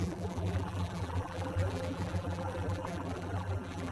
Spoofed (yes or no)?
yes